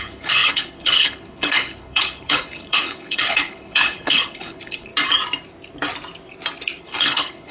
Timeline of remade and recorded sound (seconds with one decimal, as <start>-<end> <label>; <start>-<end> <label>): 0.0-4.9 remade; 4.9-6.8 recorded; 6.8-7.5 remade